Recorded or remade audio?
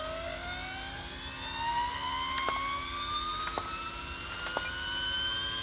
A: recorded